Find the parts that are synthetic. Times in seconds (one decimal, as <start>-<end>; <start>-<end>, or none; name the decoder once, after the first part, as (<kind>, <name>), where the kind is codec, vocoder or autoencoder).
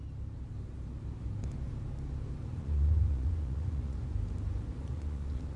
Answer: 2.5-4.2 (vocoder, Vocos); 4.8-5.6